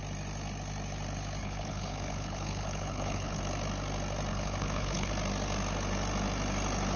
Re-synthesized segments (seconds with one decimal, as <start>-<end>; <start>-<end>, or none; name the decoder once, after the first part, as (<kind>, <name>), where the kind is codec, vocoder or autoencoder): 1.4-3.4 (codec, HILCodec); 4.3-5.1